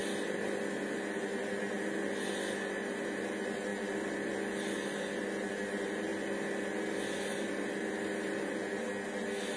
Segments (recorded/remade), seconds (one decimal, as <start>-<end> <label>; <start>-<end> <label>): 0.0-9.6 recorded